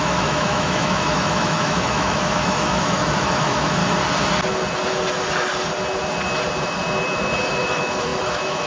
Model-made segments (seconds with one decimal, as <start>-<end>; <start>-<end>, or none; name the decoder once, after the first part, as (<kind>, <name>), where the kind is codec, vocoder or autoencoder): 0.0-3.8 (autoencoder, DAC-VAE); 7.5-8.7